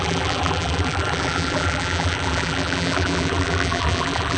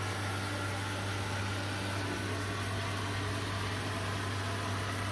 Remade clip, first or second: first